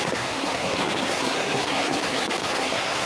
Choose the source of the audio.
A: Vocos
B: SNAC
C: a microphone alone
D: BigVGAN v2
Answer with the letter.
B